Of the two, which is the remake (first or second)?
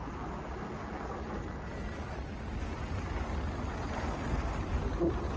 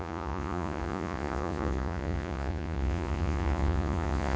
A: second